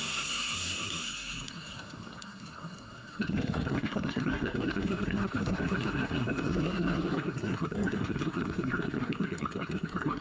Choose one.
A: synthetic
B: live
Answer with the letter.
A